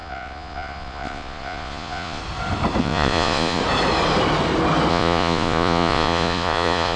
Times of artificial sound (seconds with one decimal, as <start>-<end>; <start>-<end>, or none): 0.0-2.2; 2.8-3.6; 4.9-7.0